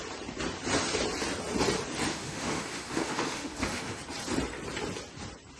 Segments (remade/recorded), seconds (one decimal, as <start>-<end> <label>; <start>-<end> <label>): 0.0-2.1 recorded; 2.1-4.0 remade; 4.0-5.6 recorded